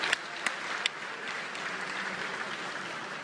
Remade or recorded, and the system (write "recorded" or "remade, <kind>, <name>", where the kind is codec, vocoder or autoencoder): recorded